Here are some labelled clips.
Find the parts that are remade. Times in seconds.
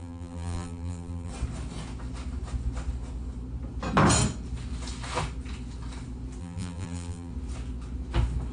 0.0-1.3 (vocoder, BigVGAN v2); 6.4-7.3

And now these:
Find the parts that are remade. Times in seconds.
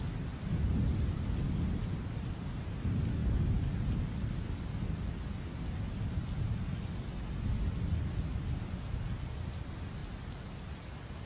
none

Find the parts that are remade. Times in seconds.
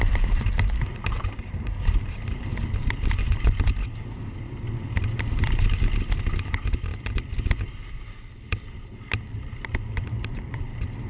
0.0-2.5 (vocoder, BigVGAN v2); 6.5-6.9; 9.4-11.1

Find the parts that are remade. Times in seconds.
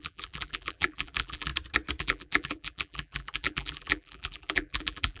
0.0-1.5 (vocoder, BigVGAN v2); 2.0-5.2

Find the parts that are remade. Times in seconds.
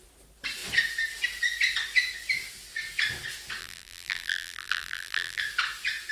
3.6-5.4 (vocoder, BigVGAN v2)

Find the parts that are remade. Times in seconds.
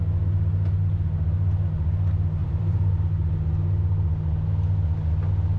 2.4-2.9 (vocoder, BigVGAN v2)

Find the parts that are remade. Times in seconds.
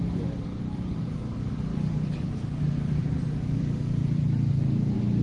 1.7-4.2 (vocoder, BigVGAN v2)